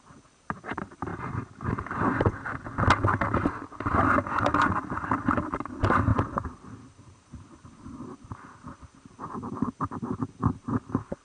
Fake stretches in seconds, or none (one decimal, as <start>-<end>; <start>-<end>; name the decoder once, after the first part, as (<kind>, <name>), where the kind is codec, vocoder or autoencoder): 0.0-1.1 (vocoder, BigVGAN v2); 4.0-11.2